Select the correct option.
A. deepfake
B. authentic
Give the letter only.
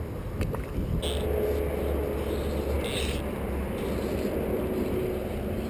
B